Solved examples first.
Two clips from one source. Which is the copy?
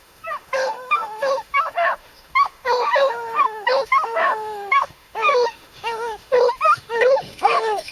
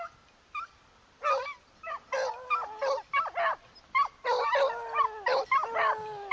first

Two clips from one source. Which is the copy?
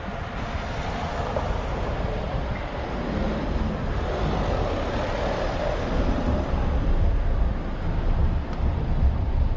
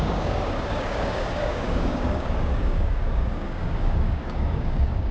second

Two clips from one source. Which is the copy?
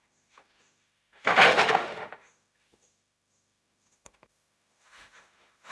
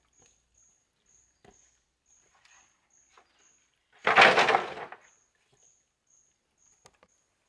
first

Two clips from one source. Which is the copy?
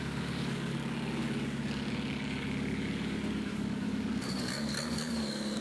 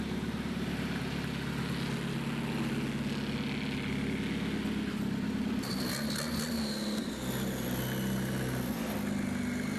first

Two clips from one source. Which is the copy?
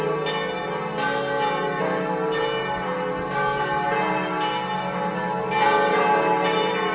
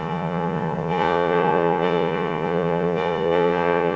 second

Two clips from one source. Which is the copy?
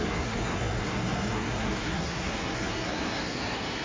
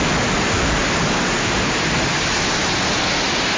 first